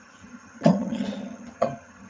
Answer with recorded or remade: remade